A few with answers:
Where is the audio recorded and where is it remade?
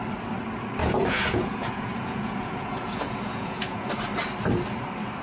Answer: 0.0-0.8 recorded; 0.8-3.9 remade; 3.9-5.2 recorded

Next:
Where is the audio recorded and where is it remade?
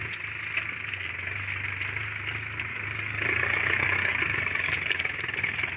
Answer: 0.0-2.7 recorded; 2.7-5.0 remade; 5.0-5.8 recorded